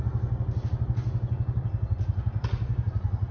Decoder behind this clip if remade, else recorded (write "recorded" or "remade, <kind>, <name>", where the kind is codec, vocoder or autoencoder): recorded